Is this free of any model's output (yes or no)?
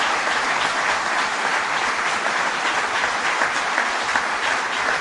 yes